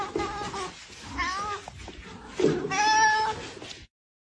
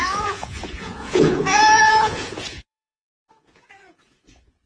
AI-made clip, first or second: second